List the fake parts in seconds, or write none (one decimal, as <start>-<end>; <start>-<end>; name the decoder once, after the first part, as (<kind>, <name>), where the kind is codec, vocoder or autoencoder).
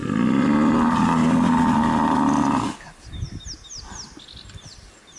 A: none